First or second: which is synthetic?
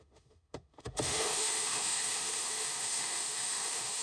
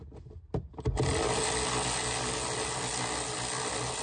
first